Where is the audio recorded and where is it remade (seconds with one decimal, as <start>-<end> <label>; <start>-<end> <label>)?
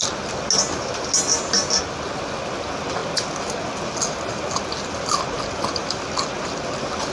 0.0-7.1 recorded